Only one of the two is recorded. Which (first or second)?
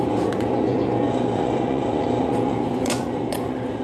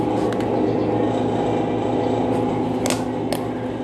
second